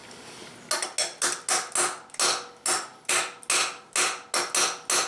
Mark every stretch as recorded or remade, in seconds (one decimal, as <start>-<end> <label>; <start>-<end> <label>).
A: 0.0-5.1 recorded